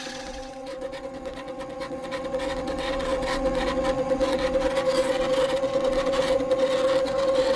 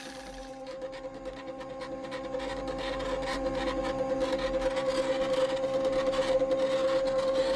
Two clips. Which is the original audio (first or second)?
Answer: second